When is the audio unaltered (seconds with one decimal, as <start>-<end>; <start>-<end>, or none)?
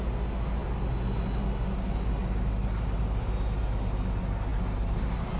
0.0-5.4